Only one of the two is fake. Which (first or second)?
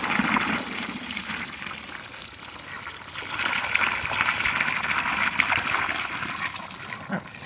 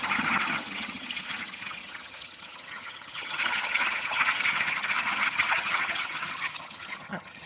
second